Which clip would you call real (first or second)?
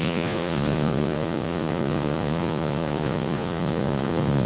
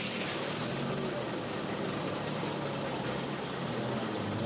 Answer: second